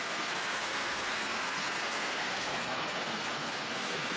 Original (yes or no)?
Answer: no